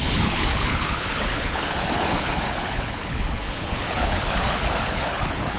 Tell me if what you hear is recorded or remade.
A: remade